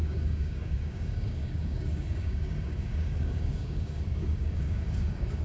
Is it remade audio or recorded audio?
remade